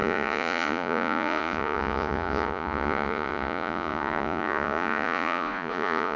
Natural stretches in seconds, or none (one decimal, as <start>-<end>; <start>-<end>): none